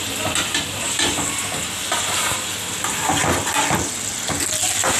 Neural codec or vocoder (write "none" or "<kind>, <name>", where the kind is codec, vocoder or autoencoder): none